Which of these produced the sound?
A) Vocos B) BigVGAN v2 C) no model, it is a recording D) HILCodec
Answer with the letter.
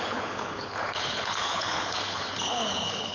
D